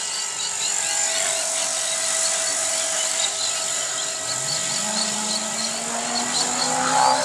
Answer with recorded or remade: recorded